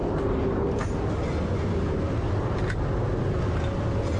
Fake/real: real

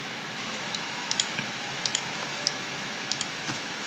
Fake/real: fake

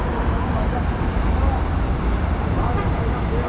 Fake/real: real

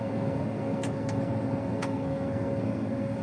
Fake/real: fake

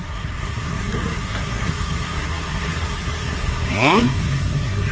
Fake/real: fake